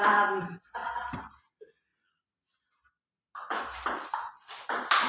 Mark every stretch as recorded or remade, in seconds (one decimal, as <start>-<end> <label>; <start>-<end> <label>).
0.0-5.1 recorded